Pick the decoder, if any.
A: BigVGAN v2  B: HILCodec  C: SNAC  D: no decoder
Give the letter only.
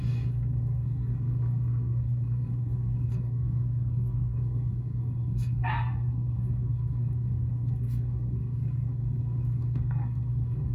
C